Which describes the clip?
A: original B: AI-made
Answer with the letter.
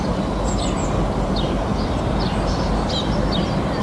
A